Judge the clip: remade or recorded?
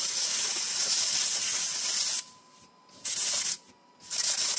recorded